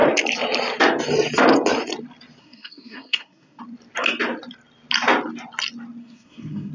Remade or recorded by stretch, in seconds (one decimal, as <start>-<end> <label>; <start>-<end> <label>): 0.0-2.4 recorded; 2.4-3.6 remade; 3.6-6.0 recorded; 6.0-6.7 remade